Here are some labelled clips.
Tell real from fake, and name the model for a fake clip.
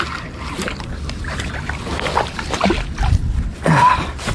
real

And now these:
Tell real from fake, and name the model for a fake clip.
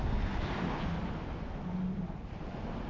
real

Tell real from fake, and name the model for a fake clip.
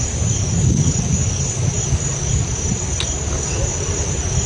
real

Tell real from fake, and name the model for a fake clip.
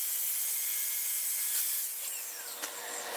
real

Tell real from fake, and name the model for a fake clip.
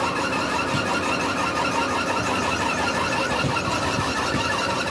real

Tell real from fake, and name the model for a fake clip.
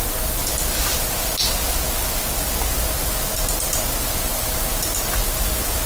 real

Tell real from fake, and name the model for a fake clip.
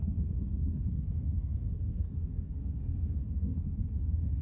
fake, codec, SNAC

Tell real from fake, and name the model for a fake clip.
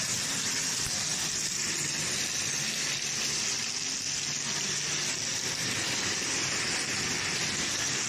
real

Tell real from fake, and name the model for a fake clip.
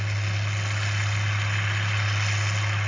real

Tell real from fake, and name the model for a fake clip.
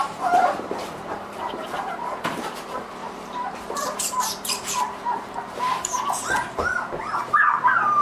fake, vocoder, BigVGAN v2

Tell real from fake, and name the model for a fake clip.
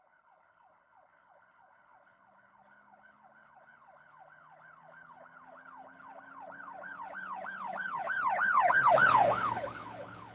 fake, codec, HILCodec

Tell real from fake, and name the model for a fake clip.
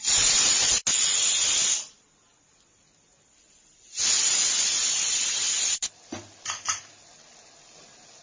real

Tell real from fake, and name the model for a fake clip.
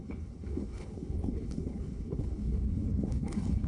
fake, codec, HILCodec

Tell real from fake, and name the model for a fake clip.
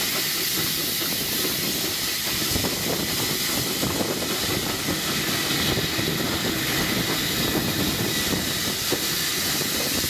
real